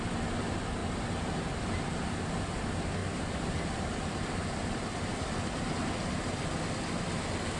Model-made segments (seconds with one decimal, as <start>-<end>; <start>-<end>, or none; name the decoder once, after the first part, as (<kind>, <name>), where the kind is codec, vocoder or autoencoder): 0.8-1.4 (vocoder, BigVGAN v2); 3.0-4.2